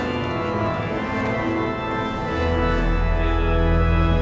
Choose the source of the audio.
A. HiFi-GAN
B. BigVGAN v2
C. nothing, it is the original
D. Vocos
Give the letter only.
C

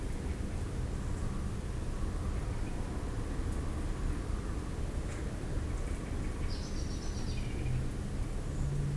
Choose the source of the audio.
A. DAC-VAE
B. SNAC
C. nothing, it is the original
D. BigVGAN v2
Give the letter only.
C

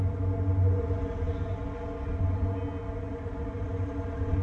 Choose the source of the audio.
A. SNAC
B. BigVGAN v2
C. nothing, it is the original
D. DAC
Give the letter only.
C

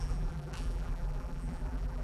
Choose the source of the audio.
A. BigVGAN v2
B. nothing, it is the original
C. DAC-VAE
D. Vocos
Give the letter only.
A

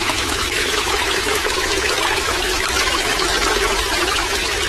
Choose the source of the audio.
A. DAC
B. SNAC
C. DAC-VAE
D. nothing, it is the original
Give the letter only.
C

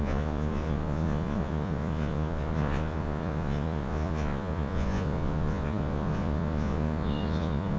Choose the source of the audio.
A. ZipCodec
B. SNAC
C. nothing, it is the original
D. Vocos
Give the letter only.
D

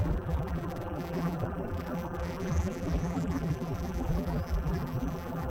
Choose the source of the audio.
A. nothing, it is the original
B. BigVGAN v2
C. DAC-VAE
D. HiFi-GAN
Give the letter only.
B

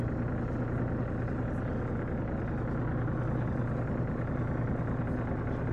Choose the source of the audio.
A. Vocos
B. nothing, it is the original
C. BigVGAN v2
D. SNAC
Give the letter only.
B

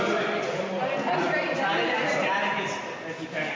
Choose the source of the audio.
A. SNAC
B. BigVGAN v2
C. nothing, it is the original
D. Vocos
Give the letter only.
C